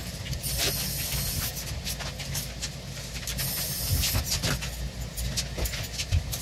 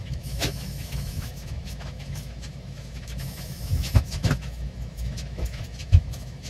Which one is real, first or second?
first